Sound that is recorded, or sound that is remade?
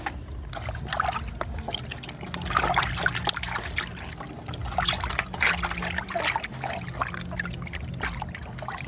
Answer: recorded